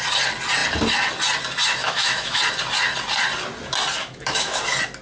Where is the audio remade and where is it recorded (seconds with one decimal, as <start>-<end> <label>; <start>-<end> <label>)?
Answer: 0.0-1.8 recorded; 1.8-2.4 remade; 2.4-4.0 recorded; 4.0-4.6 remade; 4.6-5.0 recorded